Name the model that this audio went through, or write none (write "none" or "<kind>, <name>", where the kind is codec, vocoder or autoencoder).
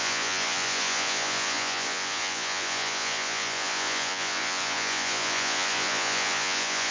vocoder, Vocos